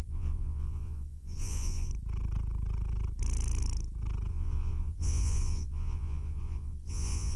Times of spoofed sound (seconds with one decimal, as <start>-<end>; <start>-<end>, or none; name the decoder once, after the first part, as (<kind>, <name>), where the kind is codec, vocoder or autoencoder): 0.0-1.9 (vocoder, Vocos); 4.3-7.4